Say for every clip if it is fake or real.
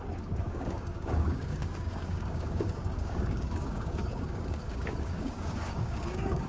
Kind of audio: fake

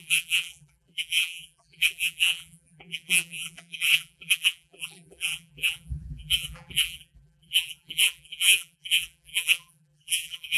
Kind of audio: fake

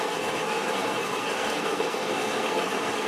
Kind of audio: fake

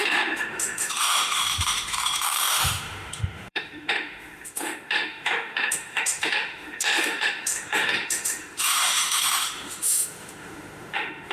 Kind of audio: fake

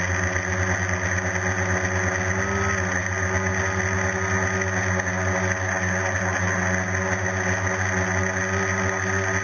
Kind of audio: real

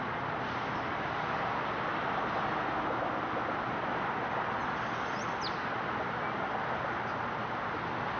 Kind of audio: real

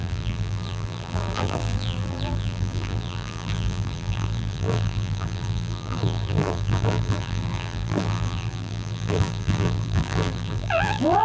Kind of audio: fake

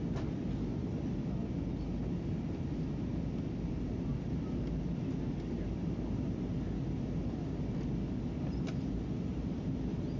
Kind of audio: real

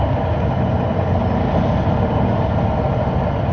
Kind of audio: real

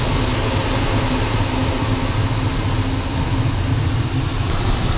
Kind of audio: real